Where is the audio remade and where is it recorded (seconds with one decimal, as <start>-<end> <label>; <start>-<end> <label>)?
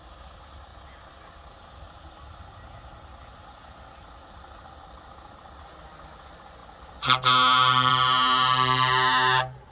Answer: 0.0-9.7 recorded